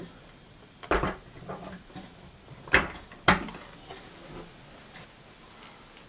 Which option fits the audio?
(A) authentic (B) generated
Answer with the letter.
A